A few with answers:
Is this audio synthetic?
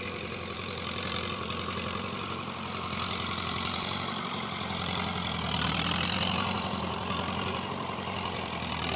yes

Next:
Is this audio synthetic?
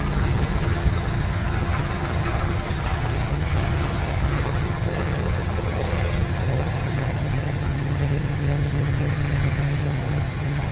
yes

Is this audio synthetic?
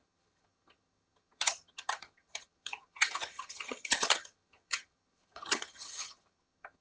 yes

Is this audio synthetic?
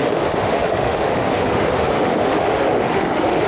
yes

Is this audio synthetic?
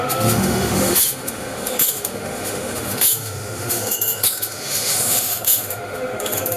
yes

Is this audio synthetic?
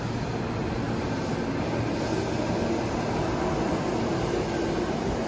no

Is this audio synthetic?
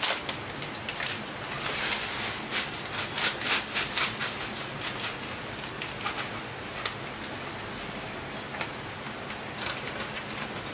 no